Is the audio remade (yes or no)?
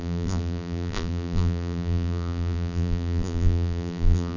yes